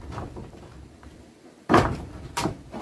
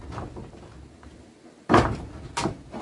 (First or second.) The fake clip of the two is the first